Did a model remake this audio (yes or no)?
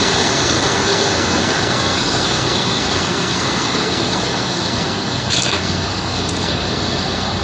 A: yes